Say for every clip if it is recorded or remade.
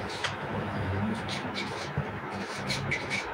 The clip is remade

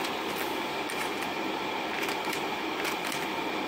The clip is recorded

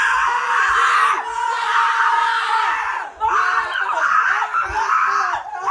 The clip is recorded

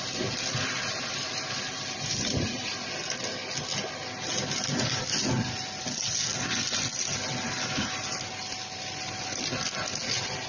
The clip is recorded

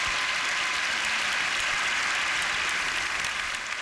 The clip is recorded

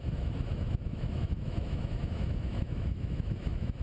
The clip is remade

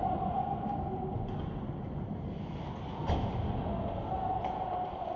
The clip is recorded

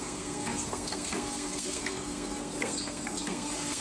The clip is remade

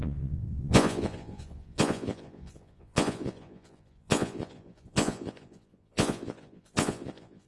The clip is remade